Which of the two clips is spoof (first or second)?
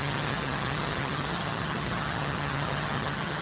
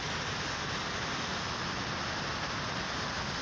first